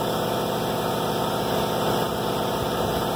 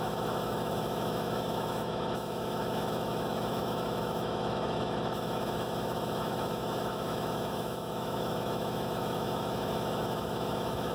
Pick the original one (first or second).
first